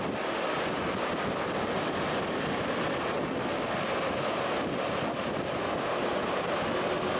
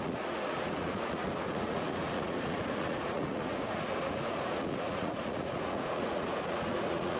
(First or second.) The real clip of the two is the first